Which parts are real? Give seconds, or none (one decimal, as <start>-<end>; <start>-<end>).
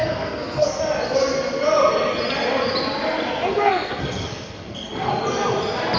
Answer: 0.8-3.5; 5.1-6.0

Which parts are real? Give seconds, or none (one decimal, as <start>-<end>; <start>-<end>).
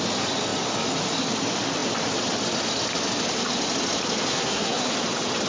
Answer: 0.0-4.3; 4.9-5.5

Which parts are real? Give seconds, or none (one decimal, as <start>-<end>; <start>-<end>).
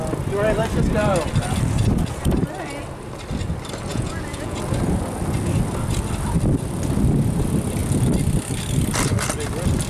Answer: 0.0-3.9; 4.6-9.9